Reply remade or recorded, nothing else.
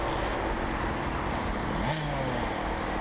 recorded